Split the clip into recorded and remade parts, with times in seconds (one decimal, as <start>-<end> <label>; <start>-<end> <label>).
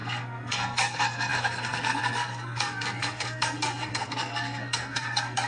0.0-5.5 remade